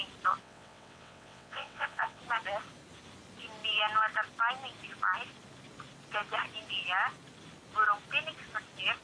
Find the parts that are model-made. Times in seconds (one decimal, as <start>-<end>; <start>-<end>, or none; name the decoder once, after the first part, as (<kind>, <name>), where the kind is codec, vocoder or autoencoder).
0.4-2.2 (vocoder, WaveNeXt)